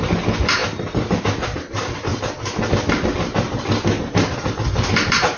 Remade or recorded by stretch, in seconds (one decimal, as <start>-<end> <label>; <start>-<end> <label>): 0.0-0.6 remade; 0.6-1.2 recorded; 1.2-2.1 remade; 2.1-4.0 recorded; 4.0-5.4 remade